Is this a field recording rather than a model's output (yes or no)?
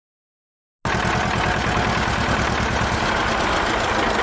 yes